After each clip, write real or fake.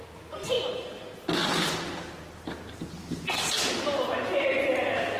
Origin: real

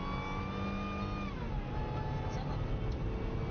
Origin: real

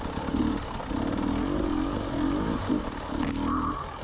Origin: real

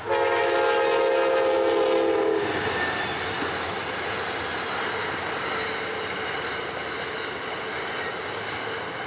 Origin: real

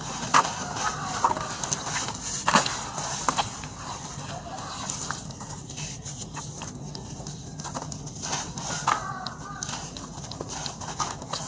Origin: real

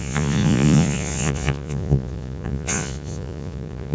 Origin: fake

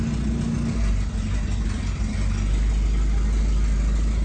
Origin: real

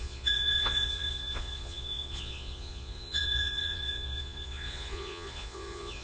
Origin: fake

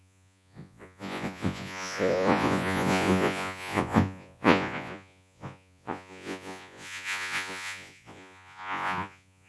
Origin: fake